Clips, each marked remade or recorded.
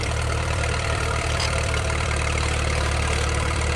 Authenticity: remade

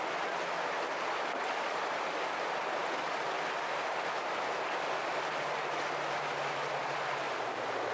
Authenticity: recorded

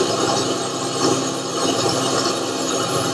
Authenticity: recorded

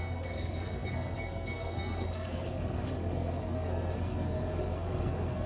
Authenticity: remade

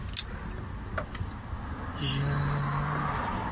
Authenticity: recorded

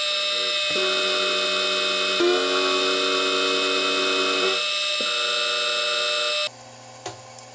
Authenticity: recorded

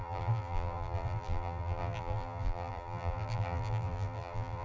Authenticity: remade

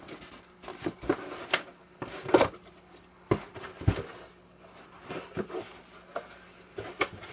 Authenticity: recorded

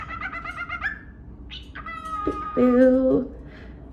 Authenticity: recorded